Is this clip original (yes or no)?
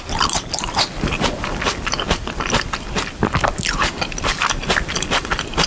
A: yes